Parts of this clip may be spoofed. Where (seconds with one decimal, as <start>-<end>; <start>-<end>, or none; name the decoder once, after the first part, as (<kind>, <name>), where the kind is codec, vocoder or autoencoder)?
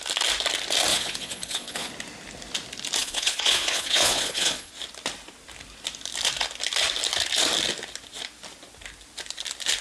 0.9-1.9 (vocoder, Vocos); 3.0-4.7